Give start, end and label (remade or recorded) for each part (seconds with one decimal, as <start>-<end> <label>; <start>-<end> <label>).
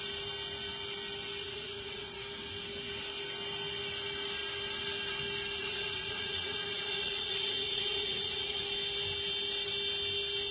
0.0-1.4 recorded; 1.4-2.2 remade; 2.2-5.6 recorded; 5.6-8.6 remade; 8.6-10.5 recorded